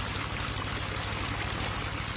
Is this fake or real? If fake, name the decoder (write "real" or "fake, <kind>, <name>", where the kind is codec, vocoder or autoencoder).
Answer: real